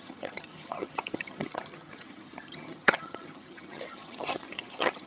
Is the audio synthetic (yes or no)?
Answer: yes